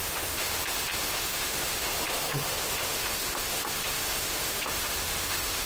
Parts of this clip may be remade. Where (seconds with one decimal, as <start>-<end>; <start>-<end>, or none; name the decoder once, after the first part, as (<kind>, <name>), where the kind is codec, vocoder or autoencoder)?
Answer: 0.0-5.7 (autoencoder, DAC-VAE)